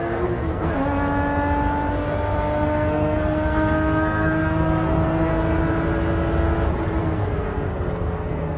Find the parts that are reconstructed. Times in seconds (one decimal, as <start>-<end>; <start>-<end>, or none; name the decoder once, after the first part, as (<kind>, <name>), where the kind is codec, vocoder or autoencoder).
0.0-0.8 (codec, SNAC); 1.9-5.3; 7.0-8.6